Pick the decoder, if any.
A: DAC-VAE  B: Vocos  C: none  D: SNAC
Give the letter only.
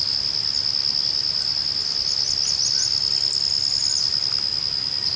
C